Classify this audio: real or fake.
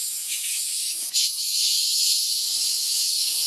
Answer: fake